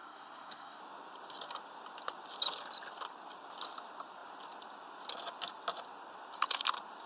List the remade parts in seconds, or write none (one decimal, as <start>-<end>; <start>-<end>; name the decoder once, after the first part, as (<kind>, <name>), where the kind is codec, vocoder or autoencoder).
0.0-0.8 (codec, SNAC)